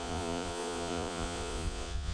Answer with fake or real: fake